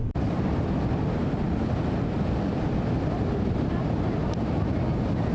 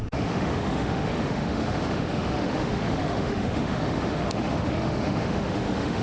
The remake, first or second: second